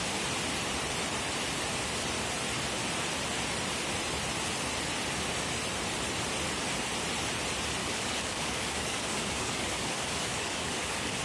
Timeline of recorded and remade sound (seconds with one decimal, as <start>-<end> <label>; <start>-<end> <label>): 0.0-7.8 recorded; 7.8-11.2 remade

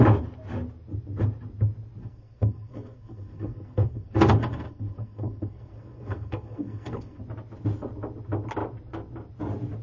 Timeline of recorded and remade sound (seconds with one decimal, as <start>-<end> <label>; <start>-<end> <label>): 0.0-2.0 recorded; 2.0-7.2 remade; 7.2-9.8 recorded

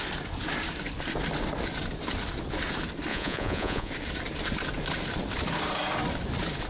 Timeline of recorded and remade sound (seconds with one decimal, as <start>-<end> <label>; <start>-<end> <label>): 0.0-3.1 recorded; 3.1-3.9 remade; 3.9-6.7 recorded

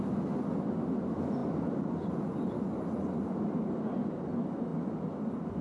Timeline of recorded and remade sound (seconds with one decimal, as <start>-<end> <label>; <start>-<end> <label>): 0.0-4.7 recorded; 4.7-5.6 remade